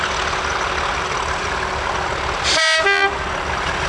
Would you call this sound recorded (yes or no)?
yes